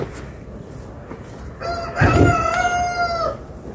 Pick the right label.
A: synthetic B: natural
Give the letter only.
B